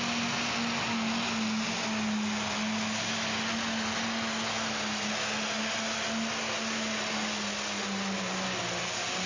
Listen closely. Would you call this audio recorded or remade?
recorded